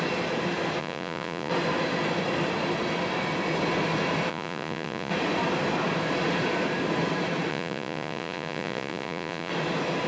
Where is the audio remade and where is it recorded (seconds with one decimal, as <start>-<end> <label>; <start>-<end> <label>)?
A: 0.0-0.8 recorded; 0.8-1.5 remade; 1.5-4.3 recorded; 4.3-5.1 remade; 5.1-7.5 recorded; 7.5-9.5 remade; 9.5-10.1 recorded